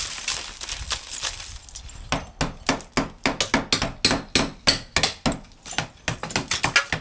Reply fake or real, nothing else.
real